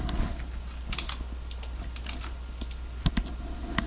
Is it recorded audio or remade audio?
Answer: recorded